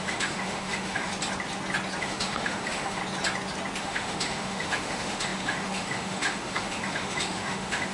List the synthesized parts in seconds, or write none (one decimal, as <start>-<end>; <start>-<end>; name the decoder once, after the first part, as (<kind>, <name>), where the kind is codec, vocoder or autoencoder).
0.0-1.1 (autoencoder, DAC-VAE); 2.0-3.0; 3.8-7.9